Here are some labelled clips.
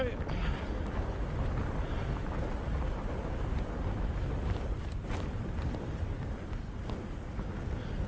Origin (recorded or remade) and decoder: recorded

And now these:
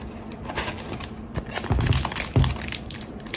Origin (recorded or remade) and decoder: recorded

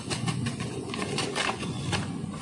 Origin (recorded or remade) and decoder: remade, vocoder, Vocos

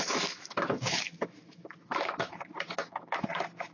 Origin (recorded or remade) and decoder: remade, autoencoder, DAC-VAE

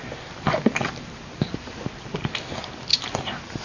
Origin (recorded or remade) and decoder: recorded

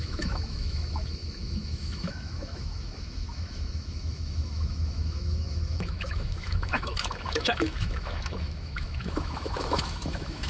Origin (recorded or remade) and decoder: remade, autoencoder, DAC-VAE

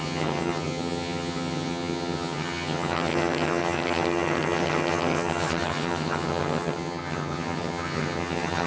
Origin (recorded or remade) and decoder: remade, vocoder, HiFi-GAN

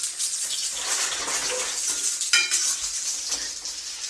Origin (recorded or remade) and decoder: recorded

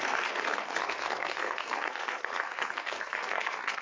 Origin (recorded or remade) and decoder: remade, codec, SNAC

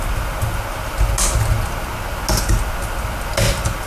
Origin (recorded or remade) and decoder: recorded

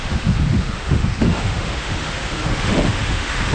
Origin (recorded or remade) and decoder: remade, autoencoder, DAC-VAE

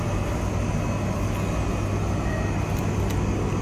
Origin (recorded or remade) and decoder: recorded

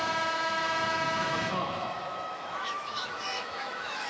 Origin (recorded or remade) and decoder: remade, autoencoder, DAC-VAE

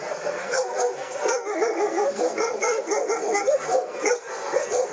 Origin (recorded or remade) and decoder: remade, codec, SNAC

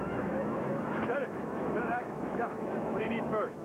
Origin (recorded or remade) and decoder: remade, autoencoder, DAC-VAE